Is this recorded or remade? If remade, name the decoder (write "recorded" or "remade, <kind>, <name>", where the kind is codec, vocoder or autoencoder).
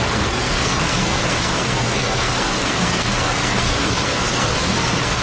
remade, codec, SNAC